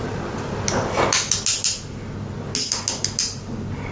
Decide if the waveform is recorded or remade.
recorded